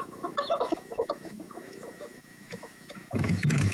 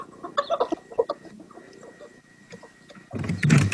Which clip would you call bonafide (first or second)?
second